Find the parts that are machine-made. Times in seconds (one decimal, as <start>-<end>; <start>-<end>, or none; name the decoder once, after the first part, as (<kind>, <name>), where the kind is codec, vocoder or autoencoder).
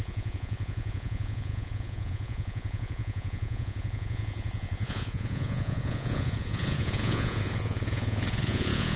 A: 0.0-9.0 (vocoder, Vocos)